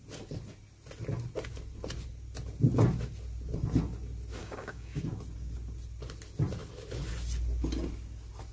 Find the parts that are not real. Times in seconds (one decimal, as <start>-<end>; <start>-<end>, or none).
4.4-5.0